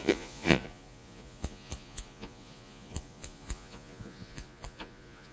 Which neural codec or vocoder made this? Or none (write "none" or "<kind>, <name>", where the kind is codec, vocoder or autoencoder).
vocoder, Vocos